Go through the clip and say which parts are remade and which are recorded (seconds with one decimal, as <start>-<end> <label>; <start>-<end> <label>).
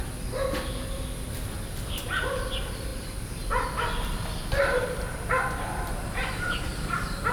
0.0-7.3 recorded